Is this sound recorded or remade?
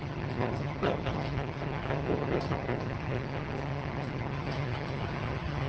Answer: remade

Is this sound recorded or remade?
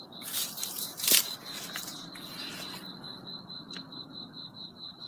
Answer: recorded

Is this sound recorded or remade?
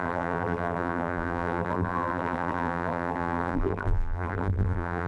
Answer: remade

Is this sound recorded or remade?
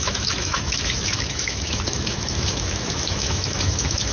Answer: remade